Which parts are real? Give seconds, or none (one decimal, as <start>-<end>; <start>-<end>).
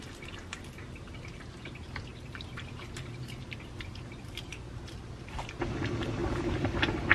0.0-2.1; 4.5-6.2